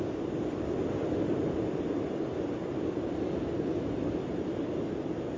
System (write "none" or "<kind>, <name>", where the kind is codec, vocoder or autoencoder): none